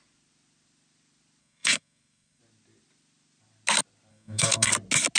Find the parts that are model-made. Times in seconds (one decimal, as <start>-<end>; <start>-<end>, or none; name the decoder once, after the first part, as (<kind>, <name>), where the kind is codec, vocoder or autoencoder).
1.4-2.4 (codec, SNAC); 4.1-4.7